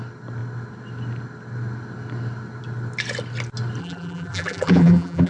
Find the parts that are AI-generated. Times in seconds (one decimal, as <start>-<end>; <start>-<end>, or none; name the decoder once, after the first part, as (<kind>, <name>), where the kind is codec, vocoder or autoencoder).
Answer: 3.8-5.3 (vocoder, BigVGAN v2)